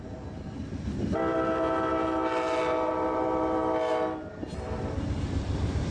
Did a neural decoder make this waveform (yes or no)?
no